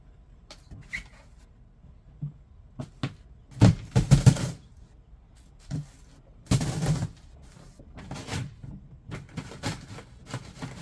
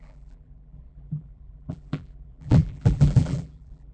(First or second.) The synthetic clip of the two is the second